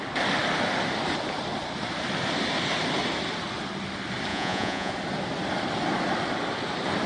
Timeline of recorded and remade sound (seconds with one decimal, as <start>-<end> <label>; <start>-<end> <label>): 0.0-4.3 recorded; 4.3-4.9 remade; 4.9-7.1 recorded